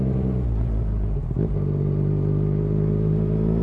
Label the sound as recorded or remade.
recorded